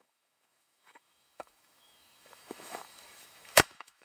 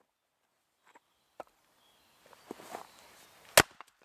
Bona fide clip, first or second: second